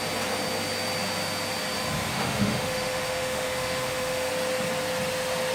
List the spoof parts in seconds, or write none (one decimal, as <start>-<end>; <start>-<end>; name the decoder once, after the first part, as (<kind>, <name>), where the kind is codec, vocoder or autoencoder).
2.1-4.3 (autoencoder, DAC-VAE)